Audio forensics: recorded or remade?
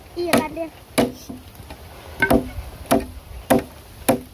recorded